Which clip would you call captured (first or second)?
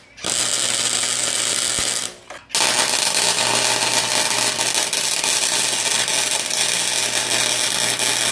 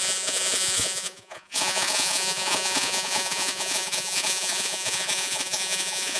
first